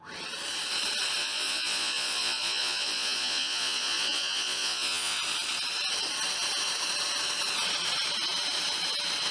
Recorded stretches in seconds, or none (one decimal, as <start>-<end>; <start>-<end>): 0.0-1.2; 5.2-9.3